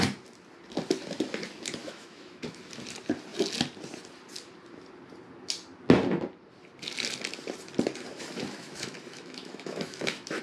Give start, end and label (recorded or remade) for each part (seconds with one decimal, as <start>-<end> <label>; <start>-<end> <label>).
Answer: 0.0-1.8 recorded; 1.8-2.4 remade; 2.4-8.1 recorded; 8.1-10.4 remade